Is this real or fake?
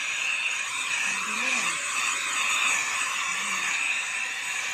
real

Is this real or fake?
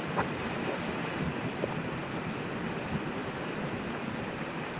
real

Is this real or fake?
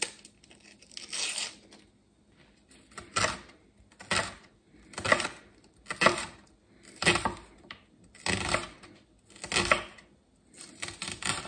real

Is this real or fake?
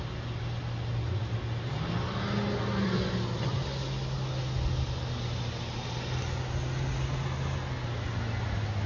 real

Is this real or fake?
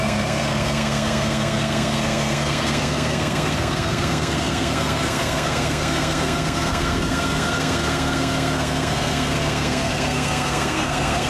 fake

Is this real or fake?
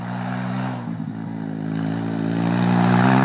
real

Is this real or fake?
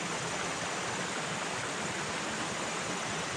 real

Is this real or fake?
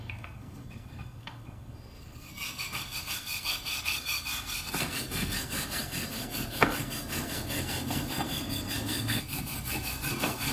fake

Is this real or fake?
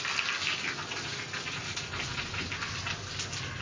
real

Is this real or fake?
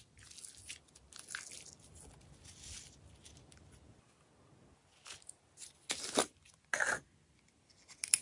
real